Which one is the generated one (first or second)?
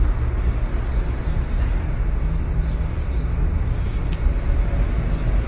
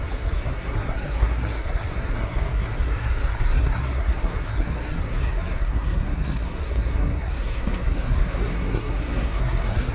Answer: second